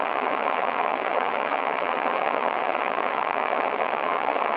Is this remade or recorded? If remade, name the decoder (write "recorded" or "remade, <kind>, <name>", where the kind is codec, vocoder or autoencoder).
remade, vocoder, WaveNeXt